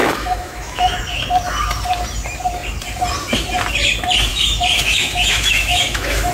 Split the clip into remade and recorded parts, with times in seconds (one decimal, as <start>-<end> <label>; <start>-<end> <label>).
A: 0.0-1.0 remade; 1.0-4.3 recorded; 4.3-6.3 remade